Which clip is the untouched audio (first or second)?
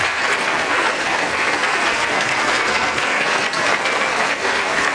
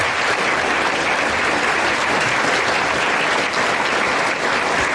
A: second